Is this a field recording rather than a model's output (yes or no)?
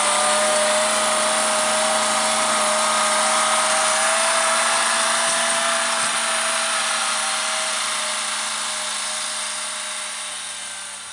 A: yes